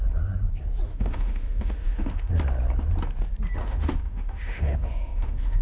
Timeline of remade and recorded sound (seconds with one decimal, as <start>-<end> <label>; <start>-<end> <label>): 0.0-0.9 recorded; 0.9-2.3 remade; 2.3-3.6 recorded; 3.6-5.6 remade